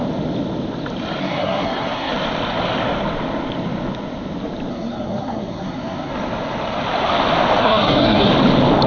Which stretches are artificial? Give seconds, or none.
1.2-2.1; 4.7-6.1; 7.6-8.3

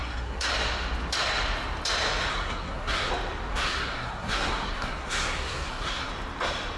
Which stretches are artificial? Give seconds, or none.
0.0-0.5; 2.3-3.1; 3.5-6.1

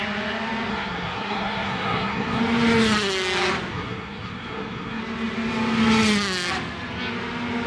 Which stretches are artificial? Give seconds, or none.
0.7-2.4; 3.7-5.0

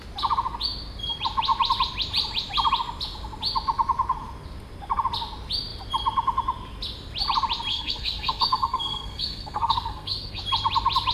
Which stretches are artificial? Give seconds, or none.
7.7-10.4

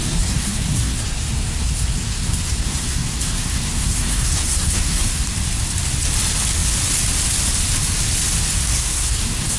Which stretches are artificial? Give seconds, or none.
0.0-5.2; 8.7-9.6

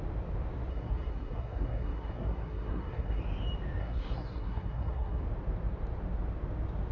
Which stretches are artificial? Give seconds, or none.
0.7-3.2; 3.8-5.2

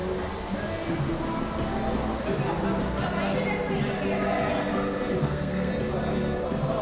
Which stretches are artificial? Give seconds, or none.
5.2-5.7